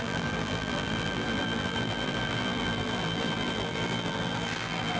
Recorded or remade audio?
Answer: remade